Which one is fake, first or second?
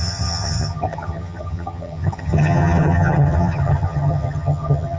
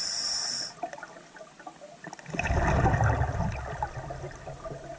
first